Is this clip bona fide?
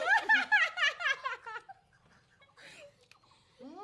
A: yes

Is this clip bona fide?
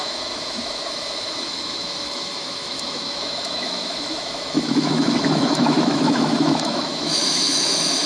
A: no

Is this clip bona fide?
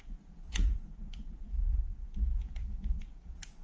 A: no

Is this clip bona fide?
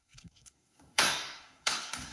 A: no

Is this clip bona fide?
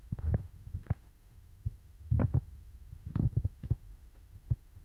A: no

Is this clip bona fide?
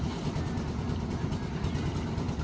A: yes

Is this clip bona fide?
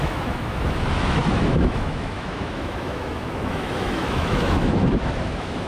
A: no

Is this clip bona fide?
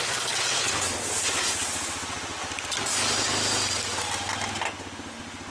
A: yes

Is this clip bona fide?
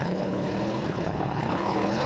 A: no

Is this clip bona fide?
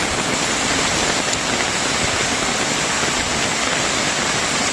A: yes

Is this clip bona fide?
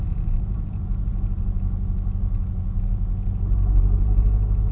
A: no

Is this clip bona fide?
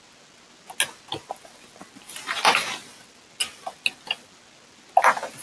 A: yes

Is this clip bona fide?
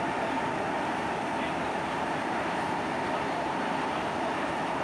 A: no